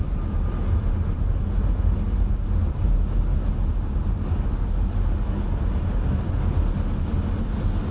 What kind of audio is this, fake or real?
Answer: real